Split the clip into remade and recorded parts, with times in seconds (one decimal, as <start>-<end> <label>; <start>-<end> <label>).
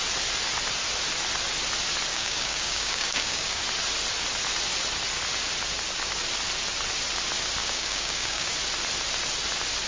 0.0-2.1 recorded; 2.1-3.6 remade; 3.6-7.6 recorded; 7.6-8.5 remade; 8.5-9.9 recorded